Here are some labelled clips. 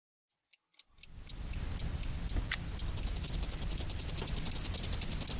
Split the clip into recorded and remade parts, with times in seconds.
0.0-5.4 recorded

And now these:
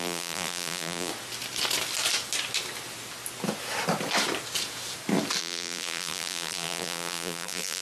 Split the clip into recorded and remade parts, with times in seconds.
0.0-1.1 remade; 1.1-5.4 recorded; 5.4-7.8 remade

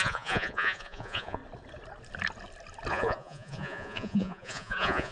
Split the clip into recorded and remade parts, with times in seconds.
0.0-1.4 remade; 1.4-2.9 recorded; 2.9-5.1 remade

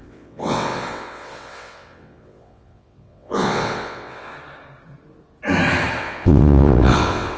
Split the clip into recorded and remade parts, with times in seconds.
0.0-4.3 remade; 4.3-6.0 recorded; 6.0-7.4 remade

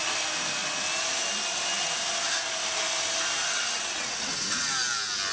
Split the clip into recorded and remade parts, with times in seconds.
0.0-3.4 recorded; 3.4-4.6 remade; 4.6-5.3 recorded